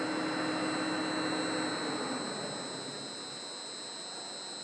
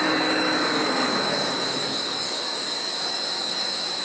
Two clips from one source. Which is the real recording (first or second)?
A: first